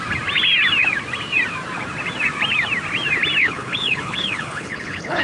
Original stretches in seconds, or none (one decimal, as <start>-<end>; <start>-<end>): 0.0-3.4